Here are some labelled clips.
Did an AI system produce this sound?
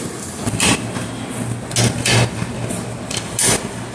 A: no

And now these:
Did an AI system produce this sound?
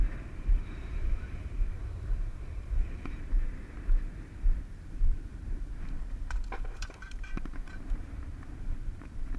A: yes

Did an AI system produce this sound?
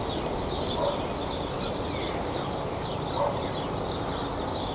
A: no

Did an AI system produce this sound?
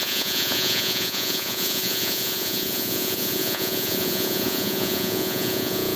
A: yes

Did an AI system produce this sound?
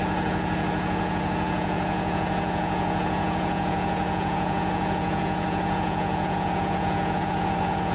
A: yes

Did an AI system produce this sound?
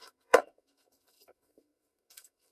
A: yes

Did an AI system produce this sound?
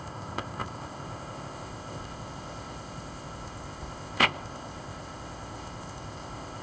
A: yes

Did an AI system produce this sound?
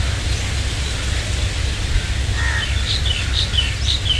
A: no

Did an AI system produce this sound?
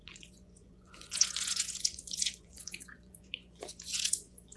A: yes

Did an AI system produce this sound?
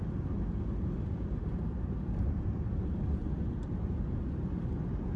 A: no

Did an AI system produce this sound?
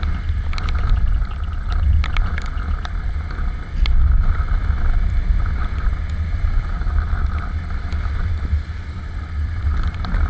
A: no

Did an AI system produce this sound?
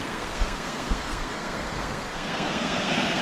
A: yes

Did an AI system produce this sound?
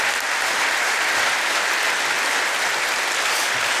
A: no